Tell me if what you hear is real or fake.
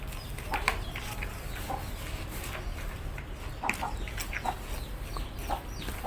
real